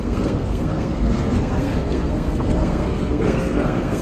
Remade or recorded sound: remade